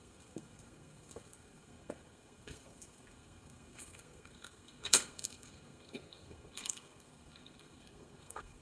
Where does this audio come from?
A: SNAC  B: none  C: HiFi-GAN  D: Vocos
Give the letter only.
A